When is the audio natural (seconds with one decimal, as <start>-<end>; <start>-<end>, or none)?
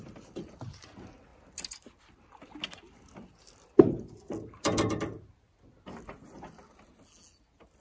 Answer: 0.0-7.8